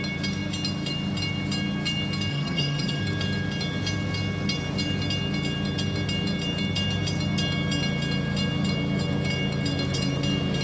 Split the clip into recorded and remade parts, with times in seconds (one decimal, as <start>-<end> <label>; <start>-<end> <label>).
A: 0.0-2.3 recorded; 2.3-3.0 remade; 3.0-10.6 recorded